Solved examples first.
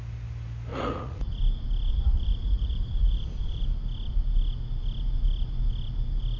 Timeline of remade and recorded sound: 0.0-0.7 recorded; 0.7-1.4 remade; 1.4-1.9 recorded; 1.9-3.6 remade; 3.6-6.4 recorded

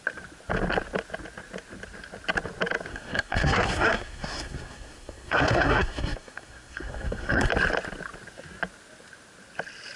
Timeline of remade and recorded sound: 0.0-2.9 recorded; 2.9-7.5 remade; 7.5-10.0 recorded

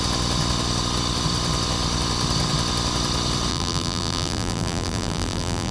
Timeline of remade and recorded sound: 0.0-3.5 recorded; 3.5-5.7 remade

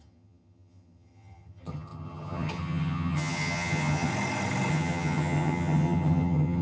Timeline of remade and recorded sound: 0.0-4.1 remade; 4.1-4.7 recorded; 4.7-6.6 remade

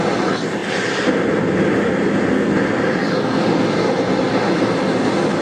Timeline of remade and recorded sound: 0.0-3.0 recorded; 3.0-3.6 remade; 3.6-5.4 recorded

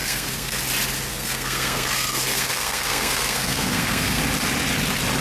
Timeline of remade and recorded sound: 0.0-0.6 remade; 0.6-1.1 recorded; 1.1-4.2 remade; 4.2-5.2 recorded